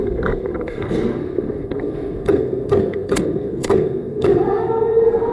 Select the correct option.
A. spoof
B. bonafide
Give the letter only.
A